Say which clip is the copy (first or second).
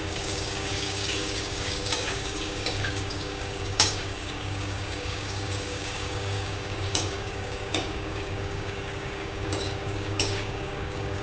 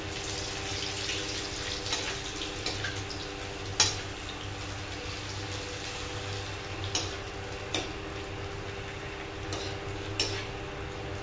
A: first